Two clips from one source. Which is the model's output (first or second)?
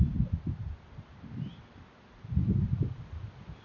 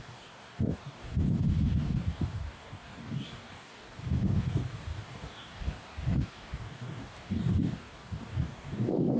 second